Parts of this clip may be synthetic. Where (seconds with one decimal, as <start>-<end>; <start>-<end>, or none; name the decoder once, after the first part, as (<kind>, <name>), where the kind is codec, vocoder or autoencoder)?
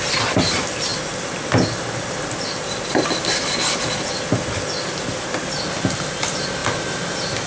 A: none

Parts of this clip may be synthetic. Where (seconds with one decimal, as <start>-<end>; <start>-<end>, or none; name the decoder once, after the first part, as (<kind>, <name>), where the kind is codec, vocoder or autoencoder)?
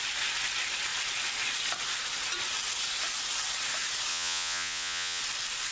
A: 4.1-5.2 (vocoder, Vocos)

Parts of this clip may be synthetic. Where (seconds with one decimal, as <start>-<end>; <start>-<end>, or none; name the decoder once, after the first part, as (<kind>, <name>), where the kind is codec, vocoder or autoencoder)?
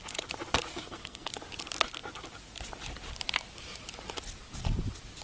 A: 0.7-1.3 (codec, SNAC)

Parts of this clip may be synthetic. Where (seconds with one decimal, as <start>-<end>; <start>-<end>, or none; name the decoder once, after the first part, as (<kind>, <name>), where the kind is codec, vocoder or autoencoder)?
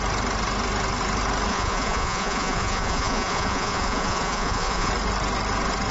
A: 1.5-4.9 (vocoder, Vocos)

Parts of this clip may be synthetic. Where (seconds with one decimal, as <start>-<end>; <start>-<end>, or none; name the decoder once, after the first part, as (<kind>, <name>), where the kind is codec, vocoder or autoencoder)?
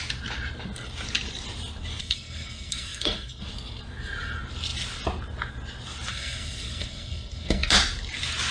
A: 2.0-3.4 (codec, SNAC); 6.1-7.7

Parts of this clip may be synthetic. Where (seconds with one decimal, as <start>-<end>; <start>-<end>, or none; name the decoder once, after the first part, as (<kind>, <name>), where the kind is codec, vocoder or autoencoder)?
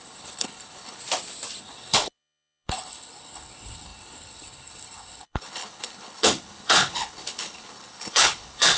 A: 0.0-1.0 (codec, HILCodec); 1.6-8.8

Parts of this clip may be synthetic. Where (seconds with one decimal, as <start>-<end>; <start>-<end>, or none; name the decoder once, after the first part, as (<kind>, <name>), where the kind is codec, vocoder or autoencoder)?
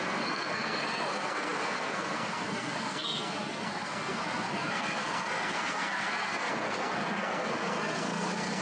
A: 0.0-8.6 (codec, SNAC)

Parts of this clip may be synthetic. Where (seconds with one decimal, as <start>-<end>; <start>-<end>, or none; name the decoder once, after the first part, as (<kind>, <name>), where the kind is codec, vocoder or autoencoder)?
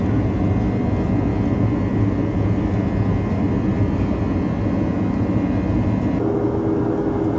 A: none